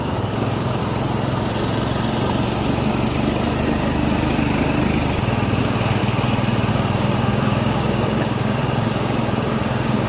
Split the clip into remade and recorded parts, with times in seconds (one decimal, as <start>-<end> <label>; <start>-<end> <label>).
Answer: 0.0-0.8 remade; 0.8-5.6 recorded; 5.6-6.0 remade; 6.0-6.7 recorded; 6.7-10.1 remade